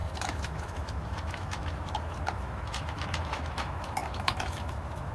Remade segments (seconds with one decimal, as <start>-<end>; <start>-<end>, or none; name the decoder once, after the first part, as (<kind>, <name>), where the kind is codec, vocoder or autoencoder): 0.0-5.1 (autoencoder, DAC-VAE)